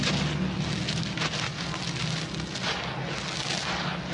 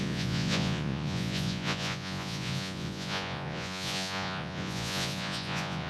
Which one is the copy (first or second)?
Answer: second